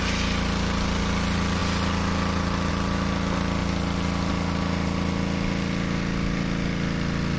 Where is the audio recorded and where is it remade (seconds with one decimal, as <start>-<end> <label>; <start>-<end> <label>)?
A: 0.0-7.4 recorded